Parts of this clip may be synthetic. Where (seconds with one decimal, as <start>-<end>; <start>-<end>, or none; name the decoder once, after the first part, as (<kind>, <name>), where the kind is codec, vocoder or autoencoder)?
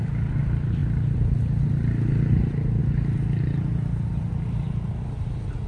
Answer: none